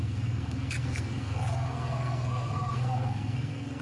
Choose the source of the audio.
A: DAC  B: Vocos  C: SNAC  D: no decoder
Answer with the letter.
C